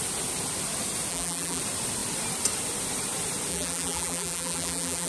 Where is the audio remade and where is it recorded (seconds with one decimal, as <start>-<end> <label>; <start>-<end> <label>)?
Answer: 0.0-1.1 recorded; 1.1-1.6 remade; 1.6-3.5 recorded; 3.5-5.1 remade